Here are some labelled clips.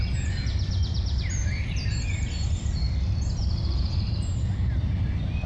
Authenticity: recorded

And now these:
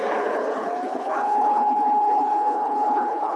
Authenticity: remade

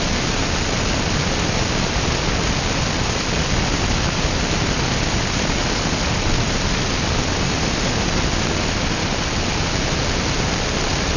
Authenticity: recorded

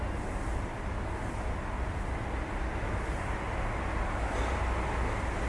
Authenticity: recorded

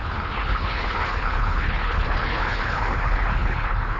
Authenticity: remade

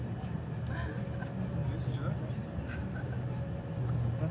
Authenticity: recorded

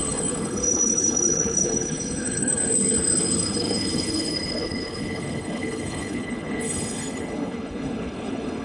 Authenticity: remade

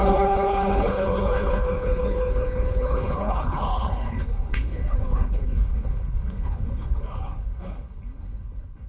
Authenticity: remade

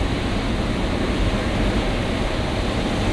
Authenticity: recorded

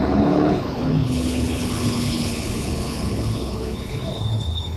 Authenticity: remade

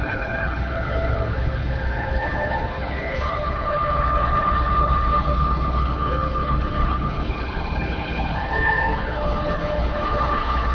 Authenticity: remade